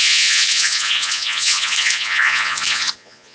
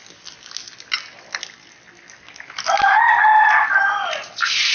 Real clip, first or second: second